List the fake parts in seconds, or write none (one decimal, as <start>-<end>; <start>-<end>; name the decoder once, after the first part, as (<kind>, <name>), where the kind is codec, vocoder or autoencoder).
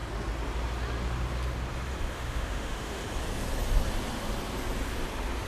2.1-3.0 (autoencoder, DAC-VAE)